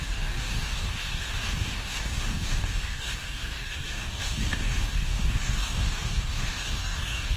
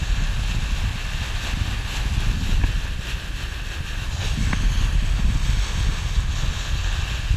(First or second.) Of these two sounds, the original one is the second